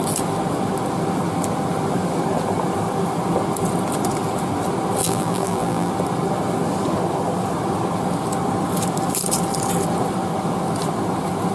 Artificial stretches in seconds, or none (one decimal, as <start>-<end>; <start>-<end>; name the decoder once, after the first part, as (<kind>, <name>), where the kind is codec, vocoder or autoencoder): 5.0-5.9 (vocoder, BigVGAN v2)